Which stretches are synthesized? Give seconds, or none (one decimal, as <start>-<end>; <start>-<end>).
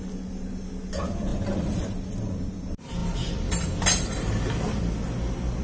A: 1.3-2.6; 3.0-4.8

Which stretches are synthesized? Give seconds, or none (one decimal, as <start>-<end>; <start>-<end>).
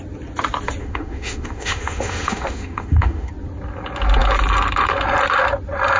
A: 0.8-3.3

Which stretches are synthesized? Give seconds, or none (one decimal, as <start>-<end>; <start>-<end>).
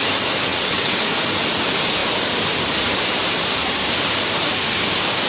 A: 0.5-1.0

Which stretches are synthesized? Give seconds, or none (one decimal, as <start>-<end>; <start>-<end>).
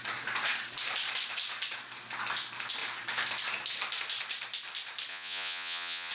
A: 5.1-6.1